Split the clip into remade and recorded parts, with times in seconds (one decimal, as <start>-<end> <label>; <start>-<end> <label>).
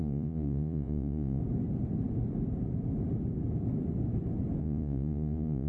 0.0-1.4 remade; 1.4-4.6 recorded; 4.6-5.7 remade